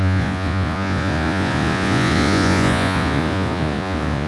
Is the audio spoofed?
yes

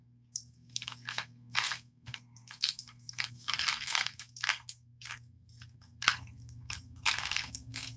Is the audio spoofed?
yes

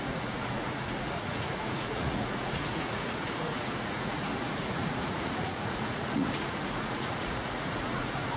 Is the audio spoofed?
yes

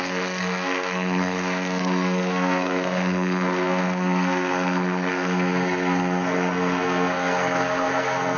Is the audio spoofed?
yes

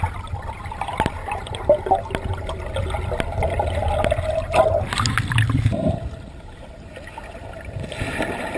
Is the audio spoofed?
yes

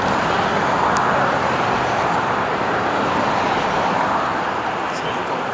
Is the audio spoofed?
no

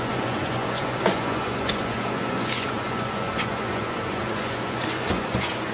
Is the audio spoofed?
yes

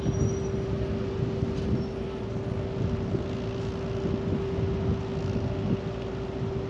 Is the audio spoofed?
no